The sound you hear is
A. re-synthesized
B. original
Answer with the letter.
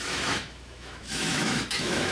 A